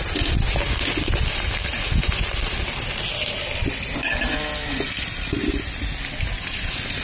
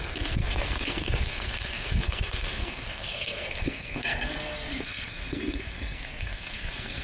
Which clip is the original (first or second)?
first